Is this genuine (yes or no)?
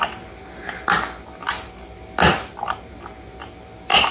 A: yes